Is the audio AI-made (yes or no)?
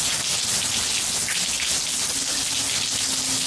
no